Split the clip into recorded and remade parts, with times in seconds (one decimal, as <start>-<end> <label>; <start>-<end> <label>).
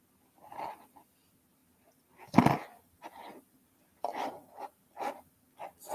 0.0-5.9 recorded